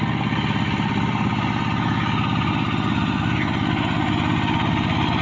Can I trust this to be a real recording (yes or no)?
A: yes